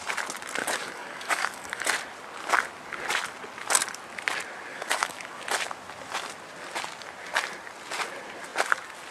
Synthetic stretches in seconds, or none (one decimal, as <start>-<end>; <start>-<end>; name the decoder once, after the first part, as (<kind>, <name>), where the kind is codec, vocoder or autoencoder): 0.6-1.9 (codec, DAC); 4.7-5.4